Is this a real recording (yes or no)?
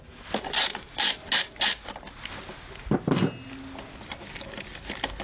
yes